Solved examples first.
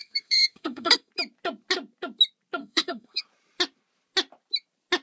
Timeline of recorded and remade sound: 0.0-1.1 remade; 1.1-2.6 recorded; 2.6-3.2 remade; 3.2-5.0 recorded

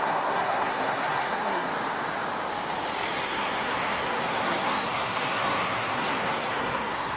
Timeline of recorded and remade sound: 0.0-1.7 remade; 1.7-3.1 recorded; 3.1-7.2 remade